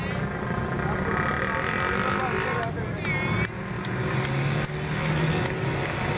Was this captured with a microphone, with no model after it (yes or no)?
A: yes